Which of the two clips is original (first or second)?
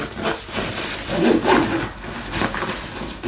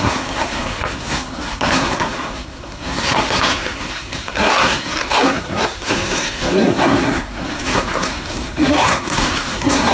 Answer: first